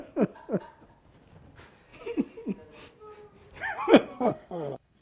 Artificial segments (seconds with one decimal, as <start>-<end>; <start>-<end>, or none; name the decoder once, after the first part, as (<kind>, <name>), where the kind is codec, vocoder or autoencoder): 4.1-5.0 (codec, SNAC)